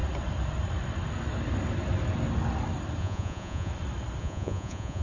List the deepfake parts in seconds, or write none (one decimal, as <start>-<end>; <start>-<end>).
3.0-3.7; 4.2-5.0